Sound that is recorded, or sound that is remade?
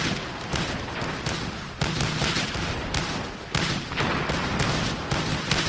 recorded